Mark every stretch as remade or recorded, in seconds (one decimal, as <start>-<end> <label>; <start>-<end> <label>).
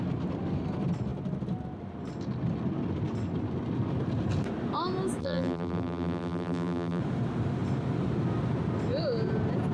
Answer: 0.0-5.2 recorded; 5.2-7.0 remade; 7.0-9.7 recorded